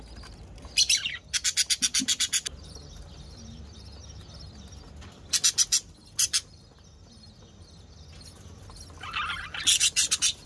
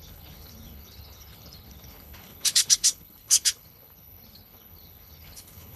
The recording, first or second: first